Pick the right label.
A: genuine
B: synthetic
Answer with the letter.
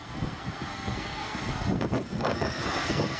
B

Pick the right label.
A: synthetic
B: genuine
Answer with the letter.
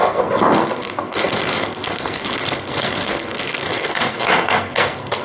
A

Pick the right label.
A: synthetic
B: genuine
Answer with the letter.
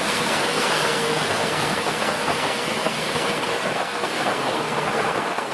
A